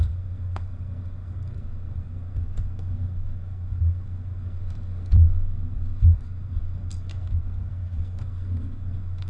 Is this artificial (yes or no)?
yes